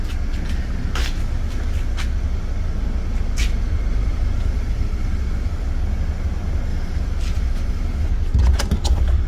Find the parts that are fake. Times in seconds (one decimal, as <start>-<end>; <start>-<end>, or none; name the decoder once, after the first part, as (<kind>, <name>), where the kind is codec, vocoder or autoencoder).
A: 3.9-5.7 (vocoder, BigVGAN v2); 6.7-8.1